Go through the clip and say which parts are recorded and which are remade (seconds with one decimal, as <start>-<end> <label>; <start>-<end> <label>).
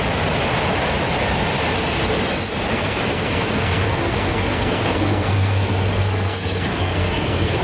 0.0-2.7 recorded; 2.7-7.6 remade